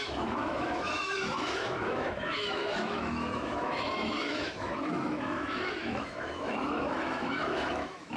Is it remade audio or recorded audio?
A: remade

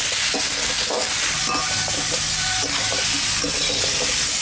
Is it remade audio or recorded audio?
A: recorded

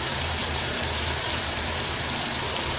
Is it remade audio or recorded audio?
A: remade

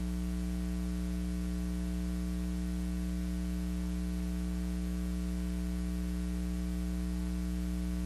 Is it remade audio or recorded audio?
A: recorded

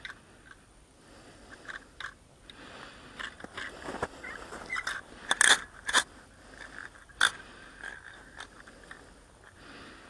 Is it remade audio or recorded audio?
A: recorded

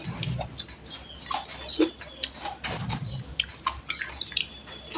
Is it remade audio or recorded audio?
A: recorded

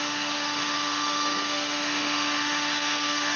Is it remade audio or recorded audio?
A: remade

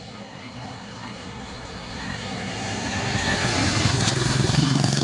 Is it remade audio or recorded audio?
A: remade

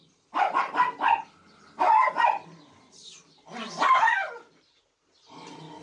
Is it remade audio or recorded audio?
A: recorded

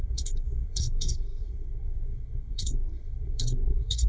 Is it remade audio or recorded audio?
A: remade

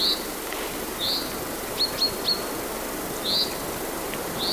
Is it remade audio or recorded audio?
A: recorded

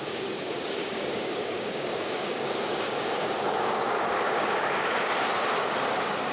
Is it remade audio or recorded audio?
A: remade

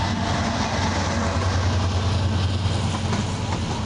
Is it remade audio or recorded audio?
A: recorded